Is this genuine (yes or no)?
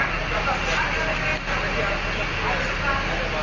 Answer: yes